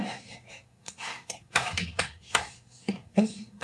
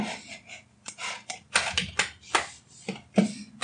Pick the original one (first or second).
second